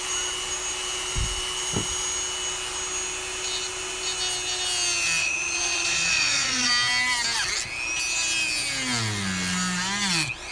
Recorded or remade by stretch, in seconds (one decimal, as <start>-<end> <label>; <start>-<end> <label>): 0.0-5.2 recorded; 5.2-6.7 remade; 6.7-10.5 recorded